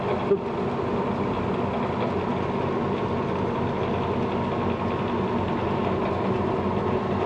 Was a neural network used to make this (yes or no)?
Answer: no